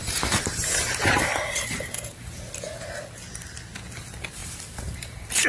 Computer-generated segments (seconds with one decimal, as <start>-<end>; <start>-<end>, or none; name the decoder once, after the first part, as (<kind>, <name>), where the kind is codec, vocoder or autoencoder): 0.0-2.5 (vocoder, BigVGAN v2); 4.4-5.5